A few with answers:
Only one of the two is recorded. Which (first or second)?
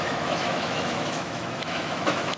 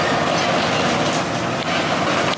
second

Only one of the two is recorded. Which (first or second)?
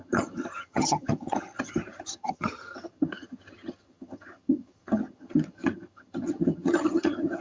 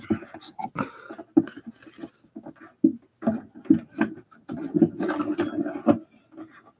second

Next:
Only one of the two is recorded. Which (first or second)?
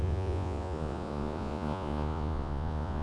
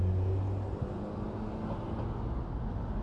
second